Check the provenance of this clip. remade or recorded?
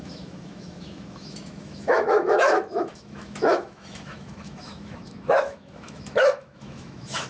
remade